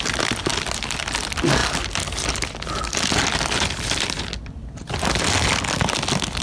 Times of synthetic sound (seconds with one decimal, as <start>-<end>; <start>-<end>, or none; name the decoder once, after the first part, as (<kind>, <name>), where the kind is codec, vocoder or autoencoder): none